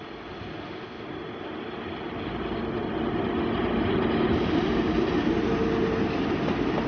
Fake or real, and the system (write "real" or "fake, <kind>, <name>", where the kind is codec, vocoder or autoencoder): real